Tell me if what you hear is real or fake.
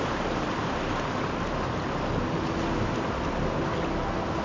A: real